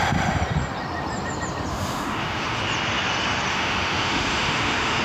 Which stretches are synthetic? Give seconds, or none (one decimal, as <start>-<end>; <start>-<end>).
1.7-2.6; 3.5-5.0